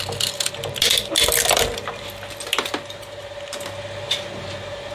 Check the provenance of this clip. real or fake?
real